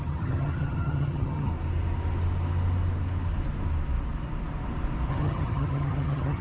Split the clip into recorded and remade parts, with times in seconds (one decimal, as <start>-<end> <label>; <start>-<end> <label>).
0.0-1.5 remade; 1.5-5.1 recorded; 5.1-6.4 remade